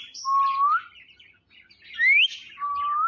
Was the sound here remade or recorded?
recorded